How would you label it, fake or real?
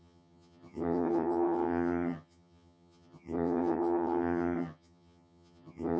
fake